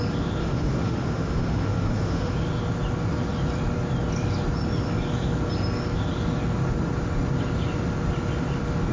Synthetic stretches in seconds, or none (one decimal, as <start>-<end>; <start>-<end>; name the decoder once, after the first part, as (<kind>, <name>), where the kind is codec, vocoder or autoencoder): 0.4-2.3 (autoencoder, DAC-VAE)